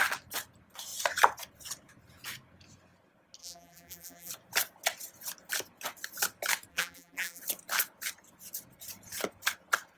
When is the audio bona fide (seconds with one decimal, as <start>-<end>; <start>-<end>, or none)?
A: 0.0-3.4; 4.3-6.7; 7.4-10.0